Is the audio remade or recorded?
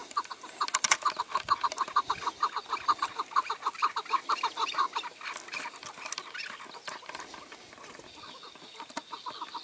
recorded